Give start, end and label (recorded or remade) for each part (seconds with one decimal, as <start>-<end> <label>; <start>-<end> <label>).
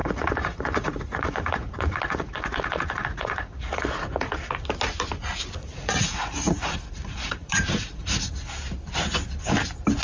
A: 0.0-4.3 remade; 4.3-5.6 recorded; 5.6-8.5 remade; 8.5-10.0 recorded